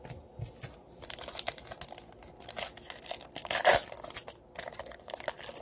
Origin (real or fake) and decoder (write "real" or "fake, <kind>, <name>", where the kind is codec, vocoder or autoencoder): real